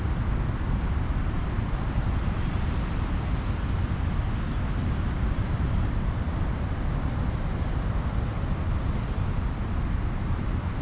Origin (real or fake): real